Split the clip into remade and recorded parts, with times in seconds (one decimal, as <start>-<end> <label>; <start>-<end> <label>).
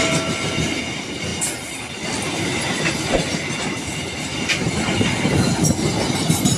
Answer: 0.0-6.6 recorded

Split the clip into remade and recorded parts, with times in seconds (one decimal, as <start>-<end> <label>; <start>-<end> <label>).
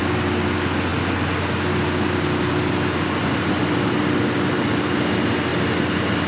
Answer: 0.0-6.3 recorded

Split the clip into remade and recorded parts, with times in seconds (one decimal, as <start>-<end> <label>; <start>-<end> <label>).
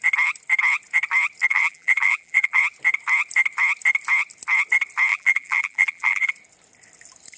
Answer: 0.0-1.5 recorded; 1.5-2.6 remade; 2.6-5.1 recorded; 5.1-6.3 remade; 6.3-7.4 recorded